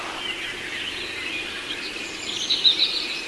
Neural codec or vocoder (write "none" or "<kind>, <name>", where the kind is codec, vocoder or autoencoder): none